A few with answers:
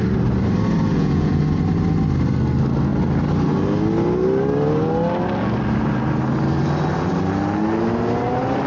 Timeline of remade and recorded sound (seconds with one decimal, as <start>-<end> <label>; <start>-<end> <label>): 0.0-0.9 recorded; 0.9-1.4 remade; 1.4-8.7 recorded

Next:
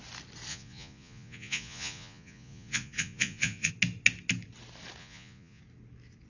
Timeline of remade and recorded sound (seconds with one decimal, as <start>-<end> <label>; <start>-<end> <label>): 0.0-0.5 recorded; 0.5-3.7 remade; 3.7-5.0 recorded; 5.0-5.6 remade; 5.6-6.3 recorded

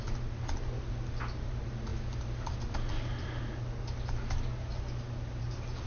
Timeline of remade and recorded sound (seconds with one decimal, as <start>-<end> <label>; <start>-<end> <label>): 0.0-5.9 recorded

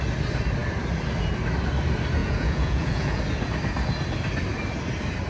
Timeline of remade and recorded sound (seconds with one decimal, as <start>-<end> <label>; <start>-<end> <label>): 0.0-2.2 recorded; 2.2-3.2 remade; 3.2-5.3 recorded